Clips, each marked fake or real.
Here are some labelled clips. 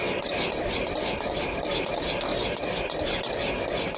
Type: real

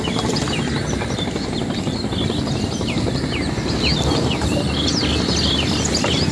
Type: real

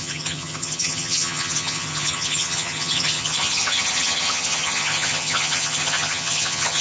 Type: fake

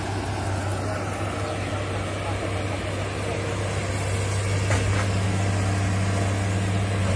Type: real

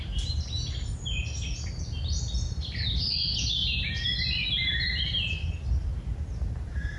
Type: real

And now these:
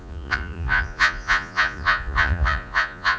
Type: fake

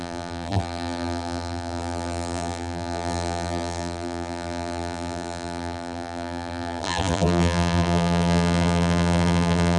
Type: fake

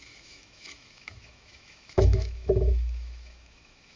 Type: fake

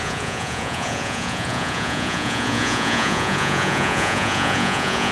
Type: fake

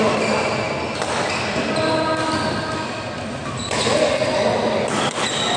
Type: real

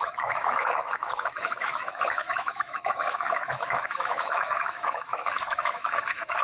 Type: fake